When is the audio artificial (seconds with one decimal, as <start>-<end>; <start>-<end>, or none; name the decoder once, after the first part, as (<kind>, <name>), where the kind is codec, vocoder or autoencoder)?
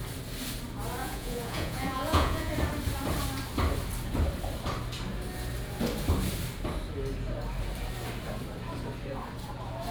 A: 1.0-2.5 (vocoder, Vocos)